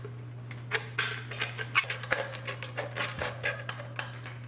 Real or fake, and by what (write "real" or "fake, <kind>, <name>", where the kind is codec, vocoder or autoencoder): real